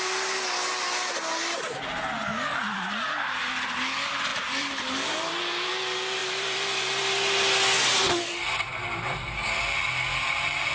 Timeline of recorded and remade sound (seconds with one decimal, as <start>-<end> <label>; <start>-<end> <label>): 0.0-4.3 recorded; 4.3-5.7 remade; 5.7-6.2 recorded; 6.2-7.0 remade; 7.0-10.1 recorded; 10.1-10.7 remade